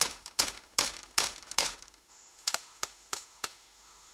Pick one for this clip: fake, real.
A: fake